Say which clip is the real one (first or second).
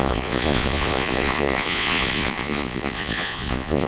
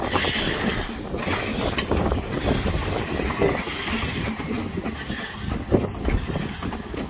second